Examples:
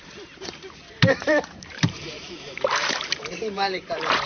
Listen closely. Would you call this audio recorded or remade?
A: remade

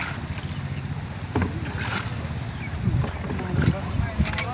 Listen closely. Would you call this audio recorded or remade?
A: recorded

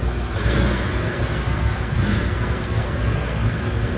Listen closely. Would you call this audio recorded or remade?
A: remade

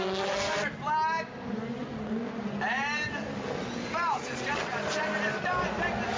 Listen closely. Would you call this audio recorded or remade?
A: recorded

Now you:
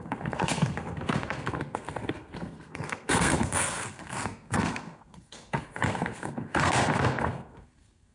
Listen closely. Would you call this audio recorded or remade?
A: remade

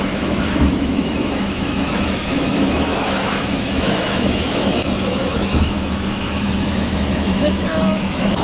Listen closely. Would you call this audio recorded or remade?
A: remade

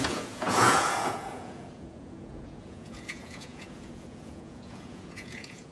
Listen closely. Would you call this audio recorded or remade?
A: remade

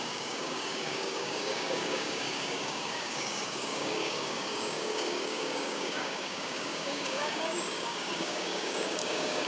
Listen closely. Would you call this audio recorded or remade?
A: remade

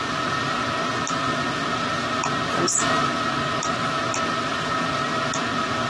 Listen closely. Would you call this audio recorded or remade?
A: recorded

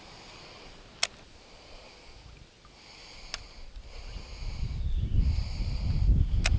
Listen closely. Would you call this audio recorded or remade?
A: recorded